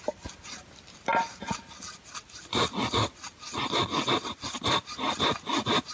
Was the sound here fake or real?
real